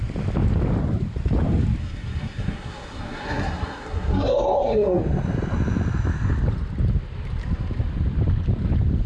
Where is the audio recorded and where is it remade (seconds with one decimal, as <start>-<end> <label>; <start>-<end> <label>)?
0.0-1.8 recorded; 1.8-5.0 remade; 5.0-9.1 recorded